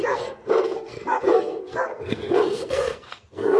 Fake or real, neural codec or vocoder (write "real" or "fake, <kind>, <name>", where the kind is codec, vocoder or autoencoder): fake, codec, SNAC